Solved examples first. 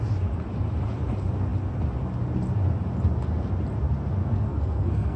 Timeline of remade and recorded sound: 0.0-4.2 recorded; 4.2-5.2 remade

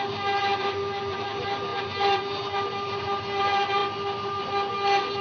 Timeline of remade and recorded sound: 0.0-5.2 recorded

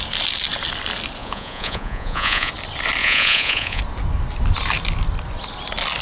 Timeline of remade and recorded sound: 0.0-1.2 recorded; 1.2-2.5 remade; 2.5-3.0 recorded; 3.0-3.8 remade; 3.8-6.0 recorded

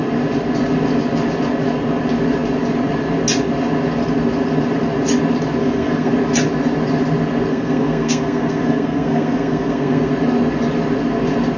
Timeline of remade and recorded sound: 0.0-5.6 recorded; 5.6-6.1 remade; 6.1-7.5 recorded; 7.5-10.1 remade; 10.1-11.6 recorded

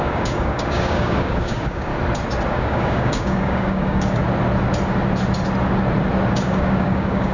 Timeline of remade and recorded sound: 0.0-1.9 remade; 1.9-2.5 recorded; 2.5-4.2 remade; 4.2-6.3 recorded; 6.3-7.3 remade